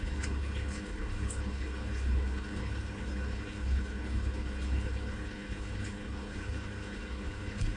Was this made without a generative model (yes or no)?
no